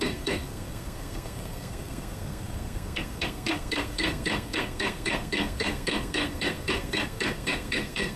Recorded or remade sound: remade